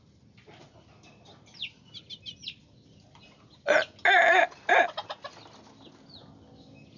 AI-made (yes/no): no